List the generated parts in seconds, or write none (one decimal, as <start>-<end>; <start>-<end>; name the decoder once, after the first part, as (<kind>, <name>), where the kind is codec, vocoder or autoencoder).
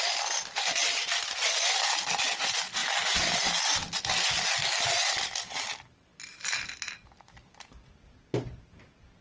0.8-1.7 (vocoder, BigVGAN v2)